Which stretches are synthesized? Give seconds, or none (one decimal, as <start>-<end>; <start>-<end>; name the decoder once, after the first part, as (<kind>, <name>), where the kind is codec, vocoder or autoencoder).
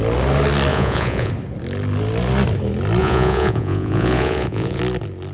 0.7-1.3 (vocoder, Vocos); 3.0-4.8